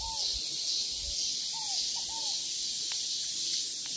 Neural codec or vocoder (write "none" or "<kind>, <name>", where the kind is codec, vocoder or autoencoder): none